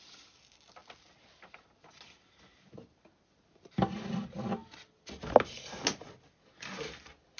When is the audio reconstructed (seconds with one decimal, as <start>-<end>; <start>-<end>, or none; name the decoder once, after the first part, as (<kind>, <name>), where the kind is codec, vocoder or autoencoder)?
none